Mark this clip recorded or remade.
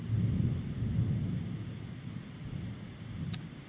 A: recorded